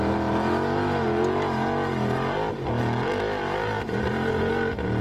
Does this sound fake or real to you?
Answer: real